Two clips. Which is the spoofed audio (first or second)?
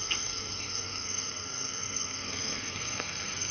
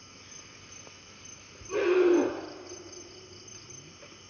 first